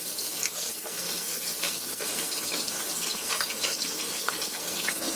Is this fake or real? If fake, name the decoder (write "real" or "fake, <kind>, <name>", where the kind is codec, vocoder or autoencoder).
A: fake, codec, SNAC